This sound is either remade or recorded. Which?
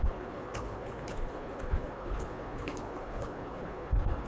remade